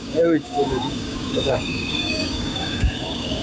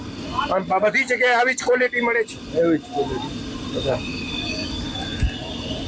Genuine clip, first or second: second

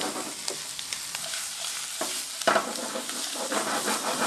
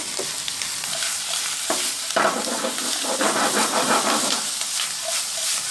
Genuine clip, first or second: first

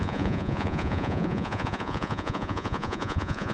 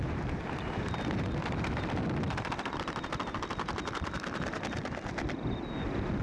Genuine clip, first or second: second